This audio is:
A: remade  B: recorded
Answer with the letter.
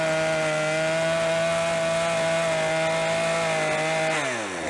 B